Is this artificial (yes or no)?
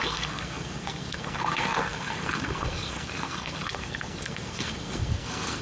yes